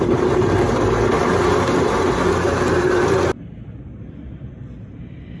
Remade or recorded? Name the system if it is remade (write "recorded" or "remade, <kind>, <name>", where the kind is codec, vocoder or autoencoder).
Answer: recorded